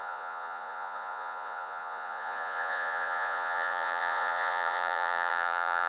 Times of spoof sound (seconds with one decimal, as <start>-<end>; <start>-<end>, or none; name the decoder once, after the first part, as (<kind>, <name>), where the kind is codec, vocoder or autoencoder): 0.0-5.9 (vocoder, Vocos)